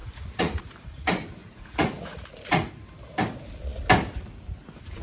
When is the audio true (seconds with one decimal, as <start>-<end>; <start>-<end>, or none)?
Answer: 0.6-1.4; 2.7-5.0